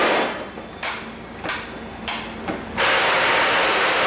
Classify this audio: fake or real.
real